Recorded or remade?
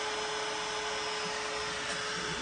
recorded